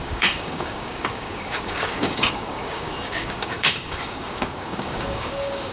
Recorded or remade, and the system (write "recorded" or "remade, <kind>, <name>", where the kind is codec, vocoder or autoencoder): remade, codec, DAC